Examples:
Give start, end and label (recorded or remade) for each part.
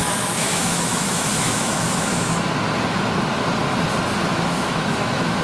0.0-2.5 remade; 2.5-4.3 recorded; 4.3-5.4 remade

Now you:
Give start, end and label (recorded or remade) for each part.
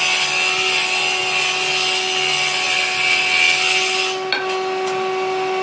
0.0-5.6 recorded